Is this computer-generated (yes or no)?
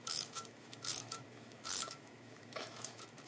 yes